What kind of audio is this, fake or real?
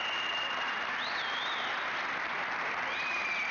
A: real